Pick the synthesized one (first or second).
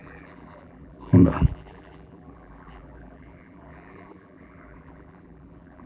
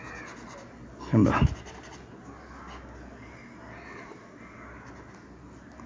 first